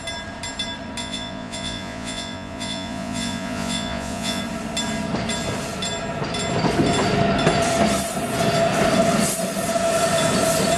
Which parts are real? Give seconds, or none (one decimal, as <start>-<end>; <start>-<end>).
0.0-1.0; 4.4-10.8